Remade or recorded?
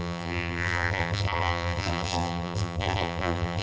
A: remade